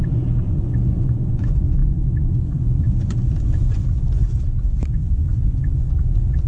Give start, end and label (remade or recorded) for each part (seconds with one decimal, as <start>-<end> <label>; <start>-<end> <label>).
0.0-6.5 remade